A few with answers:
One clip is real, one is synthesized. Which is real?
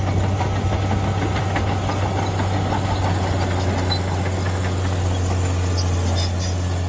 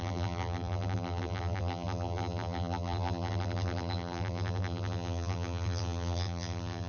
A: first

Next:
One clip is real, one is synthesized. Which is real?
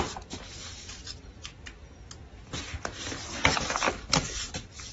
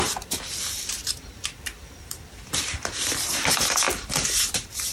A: first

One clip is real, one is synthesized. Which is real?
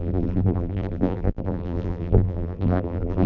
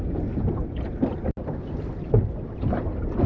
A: second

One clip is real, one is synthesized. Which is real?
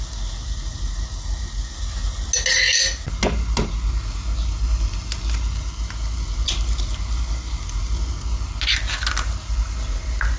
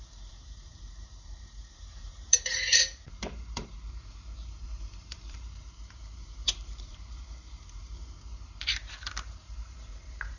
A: first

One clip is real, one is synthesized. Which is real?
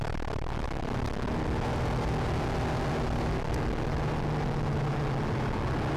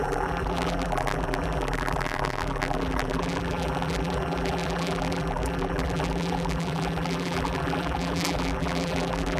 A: first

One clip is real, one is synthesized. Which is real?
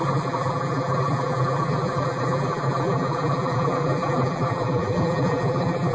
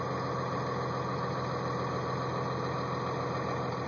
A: second